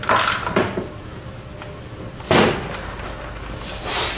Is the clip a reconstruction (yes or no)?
no